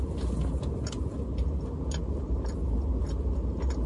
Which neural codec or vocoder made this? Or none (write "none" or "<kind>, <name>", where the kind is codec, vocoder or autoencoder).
none